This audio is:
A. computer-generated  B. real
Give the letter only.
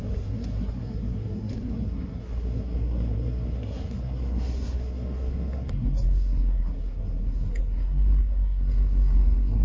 A